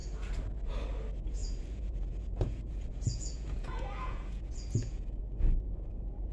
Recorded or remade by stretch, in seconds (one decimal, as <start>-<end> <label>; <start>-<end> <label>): 0.0-1.4 recorded; 1.4-5.2 remade; 5.2-6.3 recorded